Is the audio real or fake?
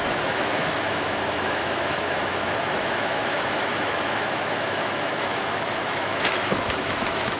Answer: fake